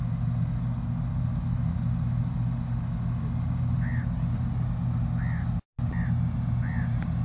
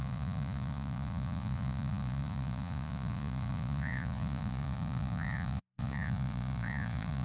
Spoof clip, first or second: second